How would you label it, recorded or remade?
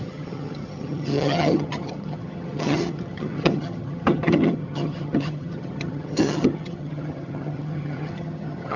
remade